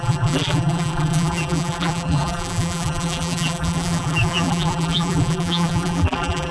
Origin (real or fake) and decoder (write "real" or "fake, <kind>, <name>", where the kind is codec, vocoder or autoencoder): fake, vocoder, BigVGAN v2